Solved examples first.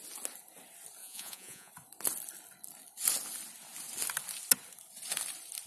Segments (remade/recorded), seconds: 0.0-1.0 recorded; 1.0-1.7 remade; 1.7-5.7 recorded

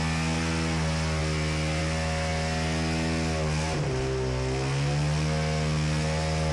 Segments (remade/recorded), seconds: 0.0-6.5 recorded

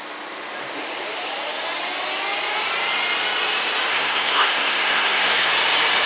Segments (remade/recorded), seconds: 0.0-3.9 recorded; 3.9-5.5 remade; 5.5-6.1 recorded

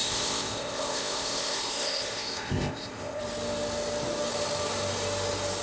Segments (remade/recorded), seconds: 0.0-3.2 remade; 3.2-5.6 recorded

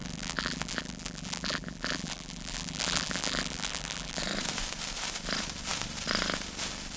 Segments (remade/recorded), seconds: 0.0-4.2 remade; 4.2-7.0 recorded

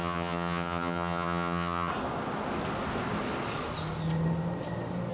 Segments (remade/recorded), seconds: 0.0-1.9 remade; 1.9-5.1 recorded

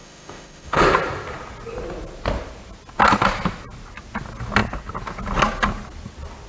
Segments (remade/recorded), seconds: 0.0-0.8 remade; 0.8-6.5 recorded